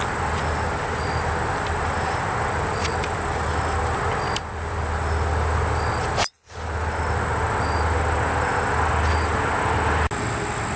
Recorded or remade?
recorded